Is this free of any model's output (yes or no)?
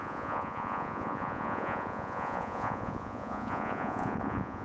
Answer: no